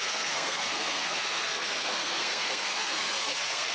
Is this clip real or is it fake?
fake